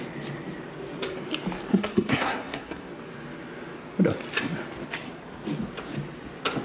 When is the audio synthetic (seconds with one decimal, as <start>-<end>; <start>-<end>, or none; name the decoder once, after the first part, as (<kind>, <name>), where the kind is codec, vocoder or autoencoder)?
1.7-2.9 (codec, SNAC)